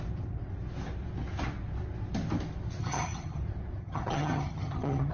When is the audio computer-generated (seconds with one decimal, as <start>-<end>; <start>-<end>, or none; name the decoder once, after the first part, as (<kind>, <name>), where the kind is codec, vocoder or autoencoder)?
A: 2.8-3.4 (vocoder, HiFi-GAN); 3.8-5.1